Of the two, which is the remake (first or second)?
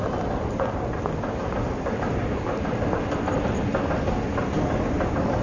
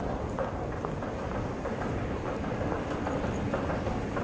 second